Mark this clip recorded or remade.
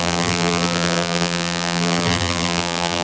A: remade